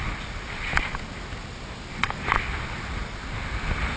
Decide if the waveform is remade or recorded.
recorded